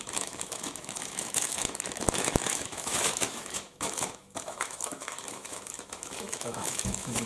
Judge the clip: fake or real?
fake